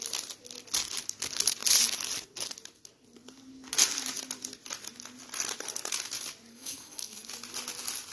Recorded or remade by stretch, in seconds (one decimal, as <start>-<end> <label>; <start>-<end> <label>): 0.0-6.5 recorded; 6.5-7.3 remade; 7.3-8.1 recorded